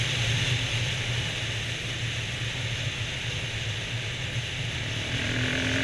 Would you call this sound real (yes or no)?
yes